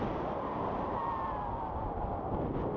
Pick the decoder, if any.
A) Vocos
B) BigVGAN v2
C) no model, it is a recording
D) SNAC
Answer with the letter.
C